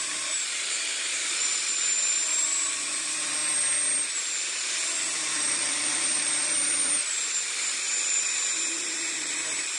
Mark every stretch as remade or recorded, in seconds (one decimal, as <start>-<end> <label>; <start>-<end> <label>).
0.0-3.4 remade; 3.4-5.0 recorded; 5.0-9.8 remade